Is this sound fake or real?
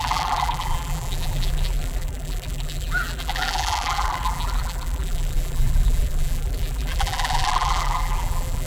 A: fake